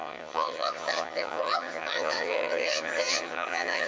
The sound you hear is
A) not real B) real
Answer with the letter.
A